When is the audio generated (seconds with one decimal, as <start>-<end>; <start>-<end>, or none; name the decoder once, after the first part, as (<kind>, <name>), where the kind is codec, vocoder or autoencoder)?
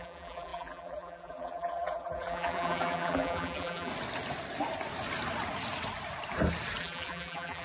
0.0-3.9 (vocoder, BigVGAN v2); 6.8-7.6